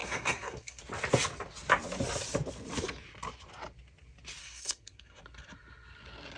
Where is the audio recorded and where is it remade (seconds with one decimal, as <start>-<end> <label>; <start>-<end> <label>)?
0.0-0.8 remade; 0.8-4.4 recorded; 4.4-5.2 remade; 5.2-6.4 recorded